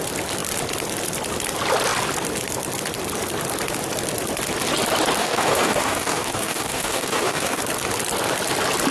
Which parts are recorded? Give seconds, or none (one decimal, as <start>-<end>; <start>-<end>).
0.0-5.2; 7.6-8.9

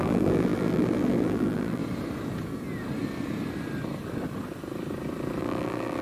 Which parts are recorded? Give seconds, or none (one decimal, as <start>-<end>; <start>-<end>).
1.8-5.4

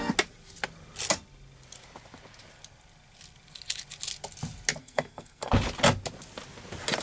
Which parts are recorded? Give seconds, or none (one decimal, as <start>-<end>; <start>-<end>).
0.0-4.8; 5.5-7.0

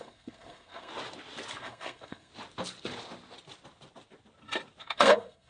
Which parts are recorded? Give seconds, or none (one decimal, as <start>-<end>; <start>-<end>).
0.9-1.6; 2.3-4.8

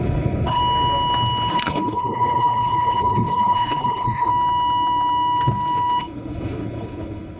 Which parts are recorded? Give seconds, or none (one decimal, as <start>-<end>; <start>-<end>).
0.6-1.5; 4.3-6.0

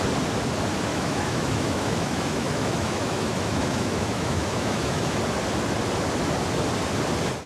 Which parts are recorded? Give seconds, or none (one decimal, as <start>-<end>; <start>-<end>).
0.0-0.9; 5.2-7.5

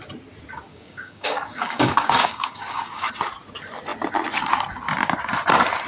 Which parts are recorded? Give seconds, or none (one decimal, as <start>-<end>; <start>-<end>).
0.0-0.7; 3.1-5.9

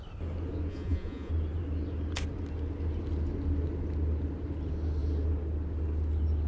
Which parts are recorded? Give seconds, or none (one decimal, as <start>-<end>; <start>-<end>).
0.0-0.7; 1.3-6.5